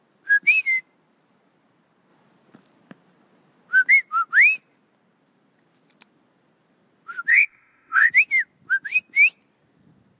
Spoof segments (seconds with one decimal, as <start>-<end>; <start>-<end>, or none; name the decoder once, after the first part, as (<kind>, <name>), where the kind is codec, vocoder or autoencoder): 7.3-8.1 (codec, ZipCodec)